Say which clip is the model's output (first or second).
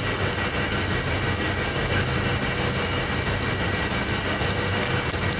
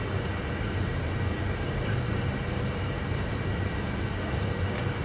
second